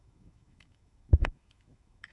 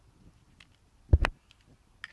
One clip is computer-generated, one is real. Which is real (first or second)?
second